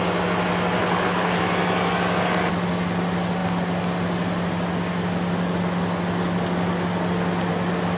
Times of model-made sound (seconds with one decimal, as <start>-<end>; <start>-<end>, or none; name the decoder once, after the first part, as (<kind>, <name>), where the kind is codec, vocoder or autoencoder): 0.8-1.4 (codec, HILCodec)